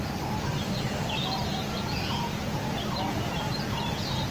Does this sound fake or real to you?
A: real